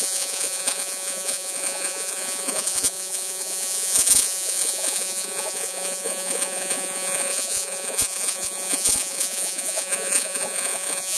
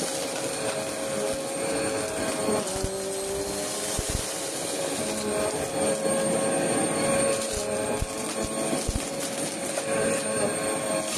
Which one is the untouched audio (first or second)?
second